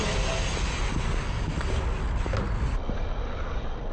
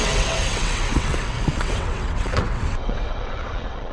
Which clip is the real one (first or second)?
first